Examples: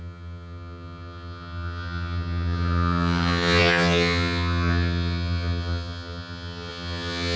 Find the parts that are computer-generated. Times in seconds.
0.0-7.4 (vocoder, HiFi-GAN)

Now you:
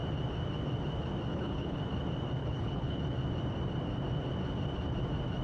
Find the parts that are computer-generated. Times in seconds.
1.3-1.8 (codec, HILCodec); 2.4-3.0

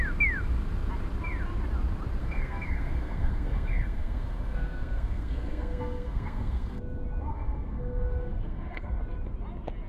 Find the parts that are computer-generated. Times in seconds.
2.2-6.8 (codec, SNAC); 7.3-9.0

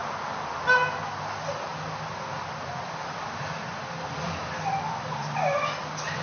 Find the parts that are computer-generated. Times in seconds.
none

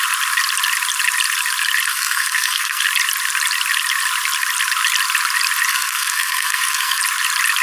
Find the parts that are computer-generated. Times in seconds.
1.9-2.8 (codec, SNAC); 5.7-7.0

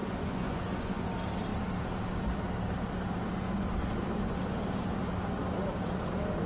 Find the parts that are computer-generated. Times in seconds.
0.0-1.1 (vocoder, Vocos)